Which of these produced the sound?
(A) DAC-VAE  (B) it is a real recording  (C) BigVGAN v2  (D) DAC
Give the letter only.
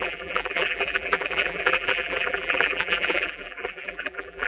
C